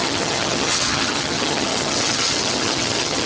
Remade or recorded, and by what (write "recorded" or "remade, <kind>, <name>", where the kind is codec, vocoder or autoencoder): remade, vocoder, HiFi-GAN